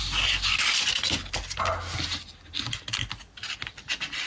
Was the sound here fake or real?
real